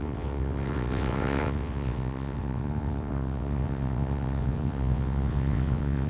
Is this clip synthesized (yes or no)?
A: yes